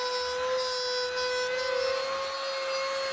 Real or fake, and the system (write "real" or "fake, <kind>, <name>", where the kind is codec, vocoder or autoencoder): real